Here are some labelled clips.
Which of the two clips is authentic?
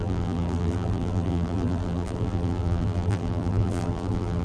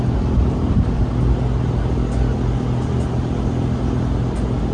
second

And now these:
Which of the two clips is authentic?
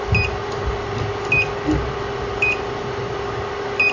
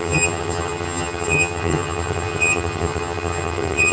first